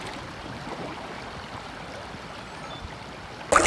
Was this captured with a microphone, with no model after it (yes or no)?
yes